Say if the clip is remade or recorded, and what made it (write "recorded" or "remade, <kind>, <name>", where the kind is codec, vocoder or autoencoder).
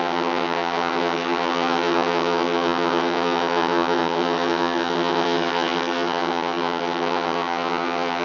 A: remade, vocoder, HiFi-GAN